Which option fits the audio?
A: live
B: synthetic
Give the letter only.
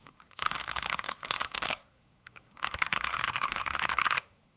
B